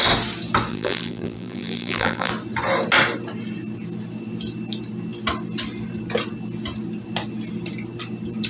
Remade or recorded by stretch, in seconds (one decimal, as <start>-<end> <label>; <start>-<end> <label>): 0.0-0.7 recorded; 0.7-2.3 remade; 2.3-8.5 recorded